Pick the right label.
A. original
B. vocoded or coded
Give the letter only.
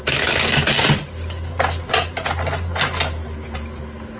A